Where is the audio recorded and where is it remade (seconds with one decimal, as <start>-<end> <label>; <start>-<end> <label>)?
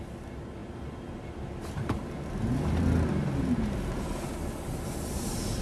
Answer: 0.0-5.6 recorded